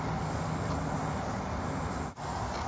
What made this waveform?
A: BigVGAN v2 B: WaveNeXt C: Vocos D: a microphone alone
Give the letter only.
D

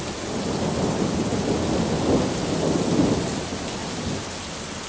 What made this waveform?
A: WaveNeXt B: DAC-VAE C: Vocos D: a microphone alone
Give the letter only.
D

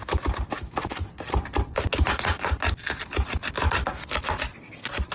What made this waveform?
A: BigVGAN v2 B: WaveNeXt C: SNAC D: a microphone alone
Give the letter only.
D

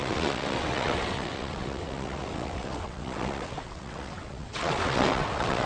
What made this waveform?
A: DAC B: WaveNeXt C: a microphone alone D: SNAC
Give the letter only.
B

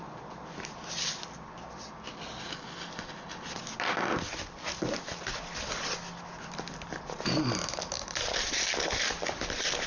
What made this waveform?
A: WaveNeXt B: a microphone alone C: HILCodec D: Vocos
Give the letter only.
B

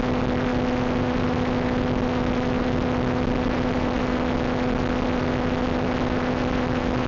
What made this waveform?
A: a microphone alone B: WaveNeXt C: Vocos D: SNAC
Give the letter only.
A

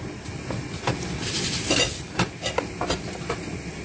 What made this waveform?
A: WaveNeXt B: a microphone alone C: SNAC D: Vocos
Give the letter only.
B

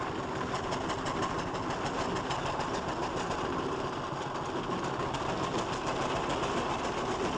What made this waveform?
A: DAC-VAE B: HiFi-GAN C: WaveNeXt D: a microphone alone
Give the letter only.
D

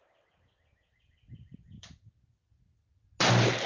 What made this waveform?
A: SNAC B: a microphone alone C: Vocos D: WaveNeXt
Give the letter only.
B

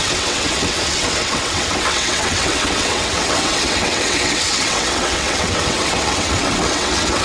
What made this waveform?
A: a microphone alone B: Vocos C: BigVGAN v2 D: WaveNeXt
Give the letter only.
D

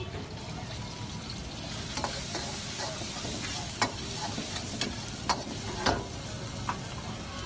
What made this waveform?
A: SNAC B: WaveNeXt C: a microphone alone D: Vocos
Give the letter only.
C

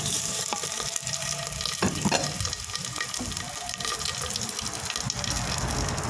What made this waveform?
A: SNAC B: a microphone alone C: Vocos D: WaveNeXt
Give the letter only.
B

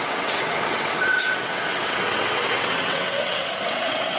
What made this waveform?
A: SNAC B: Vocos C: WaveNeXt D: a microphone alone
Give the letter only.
C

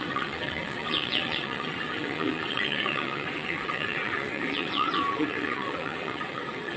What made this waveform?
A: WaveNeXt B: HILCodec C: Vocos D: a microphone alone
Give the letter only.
A